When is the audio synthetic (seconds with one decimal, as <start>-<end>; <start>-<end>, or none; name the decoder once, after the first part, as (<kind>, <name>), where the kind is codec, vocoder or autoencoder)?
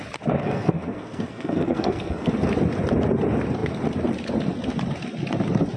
0.4-2.3 (codec, SNAC)